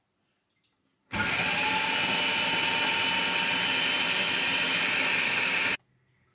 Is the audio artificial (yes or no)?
no